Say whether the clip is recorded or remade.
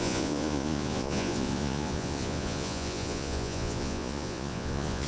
remade